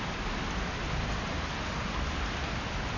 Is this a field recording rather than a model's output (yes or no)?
yes